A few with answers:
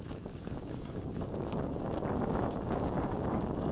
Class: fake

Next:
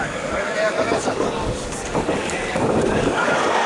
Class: fake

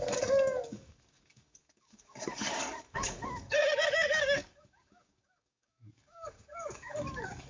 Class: fake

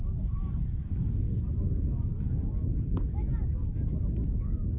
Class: fake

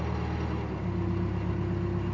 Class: real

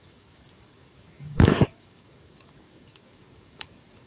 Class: fake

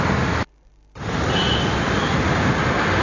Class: real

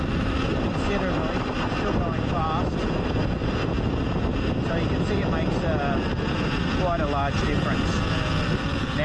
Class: real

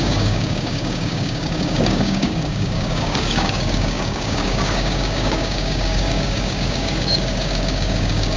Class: fake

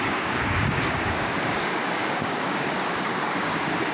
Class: fake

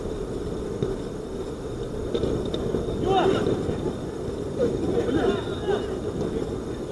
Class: real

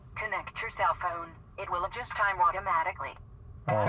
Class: real